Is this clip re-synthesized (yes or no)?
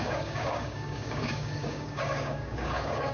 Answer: yes